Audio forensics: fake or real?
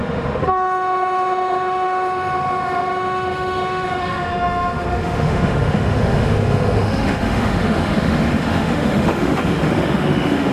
fake